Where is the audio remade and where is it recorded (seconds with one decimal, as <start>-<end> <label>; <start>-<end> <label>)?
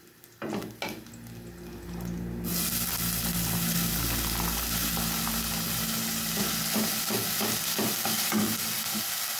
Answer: 0.0-9.4 recorded